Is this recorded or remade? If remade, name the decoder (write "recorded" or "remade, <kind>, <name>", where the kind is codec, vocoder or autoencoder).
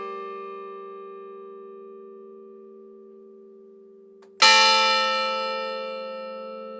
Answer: recorded